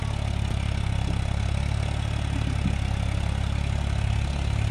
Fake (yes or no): no